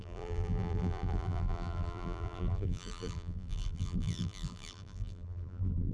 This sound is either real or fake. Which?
fake